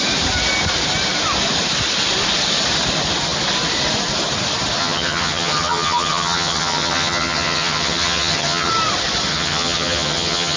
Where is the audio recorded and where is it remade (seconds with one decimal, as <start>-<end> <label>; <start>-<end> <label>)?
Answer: 0.0-4.8 recorded; 4.8-8.7 remade; 8.7-9.3 recorded; 9.3-10.6 remade